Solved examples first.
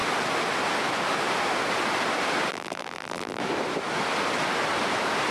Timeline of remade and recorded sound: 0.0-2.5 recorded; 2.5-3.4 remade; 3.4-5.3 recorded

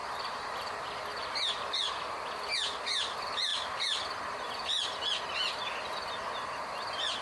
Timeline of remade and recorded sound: 0.0-0.7 remade; 0.7-7.2 recorded

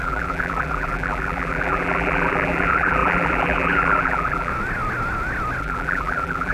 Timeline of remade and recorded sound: 0.0-4.5 remade; 4.5-5.6 recorded; 5.6-6.5 remade

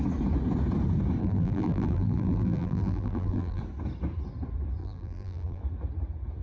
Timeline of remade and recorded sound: 0.0-1.2 recorded; 1.2-3.6 remade; 3.6-4.8 recorded; 4.8-5.6 remade; 5.6-6.4 recorded

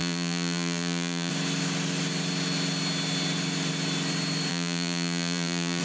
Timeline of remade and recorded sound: 0.0-1.3 remade; 1.3-4.5 recorded; 4.5-5.8 remade

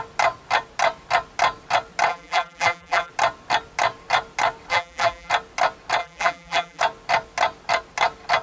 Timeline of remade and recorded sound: 0.0-2.1 recorded; 2.1-3.1 remade; 3.1-4.7 recorded; 4.7-5.3 remade; 5.3-6.0 recorded; 6.0-6.8 remade; 6.8-8.4 recorded

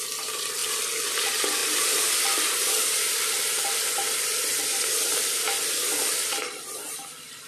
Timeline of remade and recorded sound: 0.0-7.5 recorded

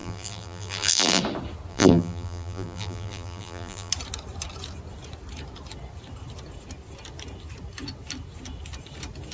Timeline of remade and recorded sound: 0.0-1.2 remade; 1.2-1.7 recorded; 1.7-3.9 remade; 3.9-9.3 recorded